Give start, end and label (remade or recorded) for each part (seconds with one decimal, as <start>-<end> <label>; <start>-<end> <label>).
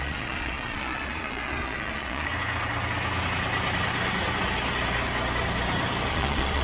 0.0-2.3 remade; 2.3-6.1 recorded; 6.1-6.6 remade